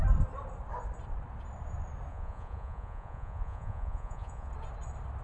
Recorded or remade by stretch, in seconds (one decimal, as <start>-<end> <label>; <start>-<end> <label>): 0.0-2.1 recorded; 2.1-4.5 remade; 4.5-5.2 recorded